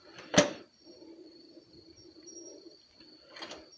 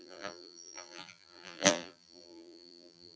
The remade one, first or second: second